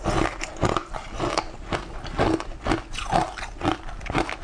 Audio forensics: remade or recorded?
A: recorded